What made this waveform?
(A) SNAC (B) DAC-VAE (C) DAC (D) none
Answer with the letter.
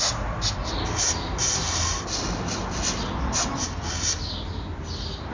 D